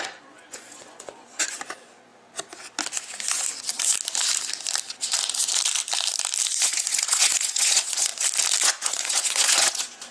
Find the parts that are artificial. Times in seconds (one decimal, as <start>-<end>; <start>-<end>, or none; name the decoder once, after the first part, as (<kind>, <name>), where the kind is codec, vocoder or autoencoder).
0.0-2.1 (vocoder, Vocos); 6.6-8.1; 8.6-10.1